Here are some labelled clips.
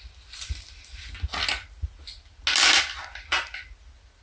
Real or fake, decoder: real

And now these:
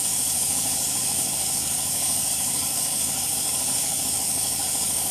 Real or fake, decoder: fake, codec, DAC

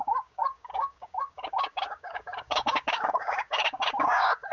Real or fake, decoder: fake, codec, DAC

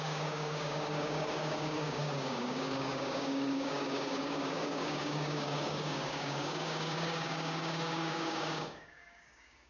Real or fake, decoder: fake, codec, DAC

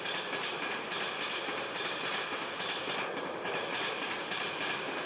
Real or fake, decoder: real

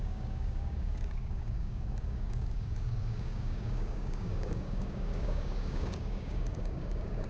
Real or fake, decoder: fake, codec, DAC